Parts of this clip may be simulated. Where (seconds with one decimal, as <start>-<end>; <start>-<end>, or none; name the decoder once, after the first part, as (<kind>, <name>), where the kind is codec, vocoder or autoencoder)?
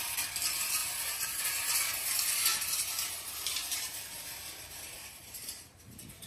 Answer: 0.8-1.4 (vocoder, BigVGAN v2); 2.5-6.3